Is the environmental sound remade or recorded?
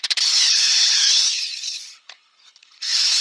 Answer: remade